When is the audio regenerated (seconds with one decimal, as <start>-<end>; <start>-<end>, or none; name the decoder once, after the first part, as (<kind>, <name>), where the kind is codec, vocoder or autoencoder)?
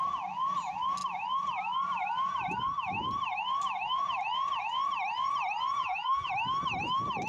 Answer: 5.8-6.3 (vocoder, BigVGAN v2)